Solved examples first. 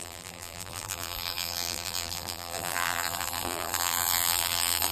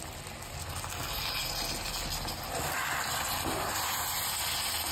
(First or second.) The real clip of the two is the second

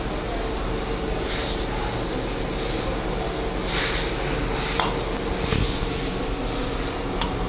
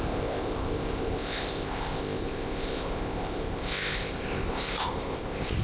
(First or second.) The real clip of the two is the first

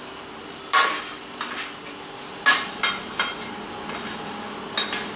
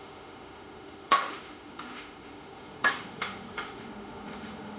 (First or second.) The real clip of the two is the first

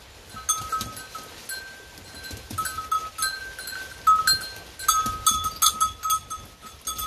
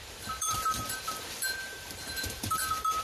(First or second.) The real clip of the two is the first